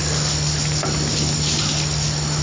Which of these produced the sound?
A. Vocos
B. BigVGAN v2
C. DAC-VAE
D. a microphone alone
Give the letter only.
D